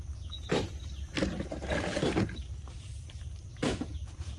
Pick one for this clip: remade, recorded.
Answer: recorded